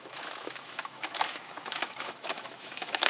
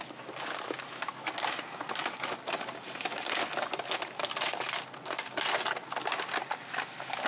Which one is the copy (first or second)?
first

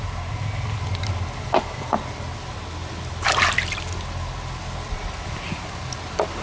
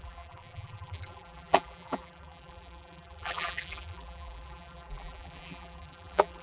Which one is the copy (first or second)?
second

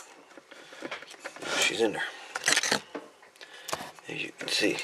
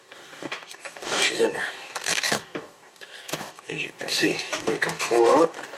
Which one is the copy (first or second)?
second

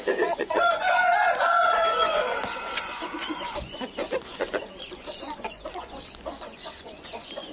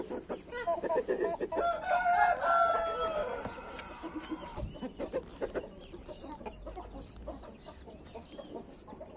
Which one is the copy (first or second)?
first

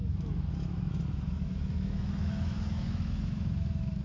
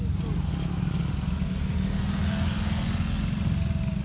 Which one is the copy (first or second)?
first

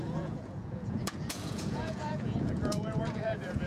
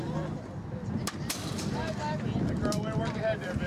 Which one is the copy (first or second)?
first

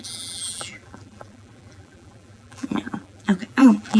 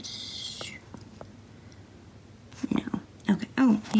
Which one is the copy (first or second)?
first